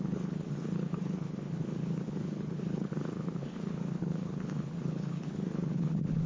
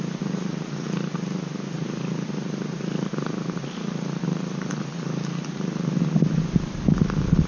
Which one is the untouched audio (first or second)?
second